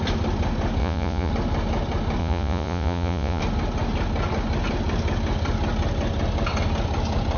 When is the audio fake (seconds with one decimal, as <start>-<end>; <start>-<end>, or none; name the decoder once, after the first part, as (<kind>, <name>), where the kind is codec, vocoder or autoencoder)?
0.8-1.3 (vocoder, Vocos); 2.2-3.4